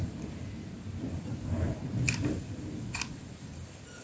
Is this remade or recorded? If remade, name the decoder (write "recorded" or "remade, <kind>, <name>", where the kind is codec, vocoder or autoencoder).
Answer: remade, vocoder, BigVGAN v2